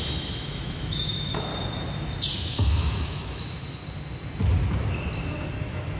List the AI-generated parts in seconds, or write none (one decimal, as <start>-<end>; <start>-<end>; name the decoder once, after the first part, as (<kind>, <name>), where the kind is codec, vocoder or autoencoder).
0.0-1.5 (autoencoder, DAC-VAE); 2.3-3.8; 5.5-6.0